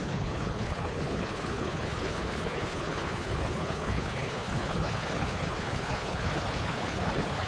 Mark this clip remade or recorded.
remade